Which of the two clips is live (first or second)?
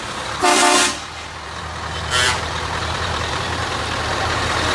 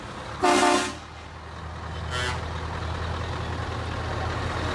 second